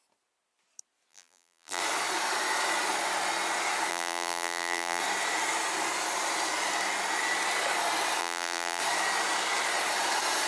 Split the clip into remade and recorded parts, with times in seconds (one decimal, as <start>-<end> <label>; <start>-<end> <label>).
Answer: 0.0-1.1 recorded; 1.1-1.8 remade; 1.8-3.9 recorded; 3.9-5.0 remade; 5.0-8.2 recorded; 8.2-8.8 remade; 8.8-10.5 recorded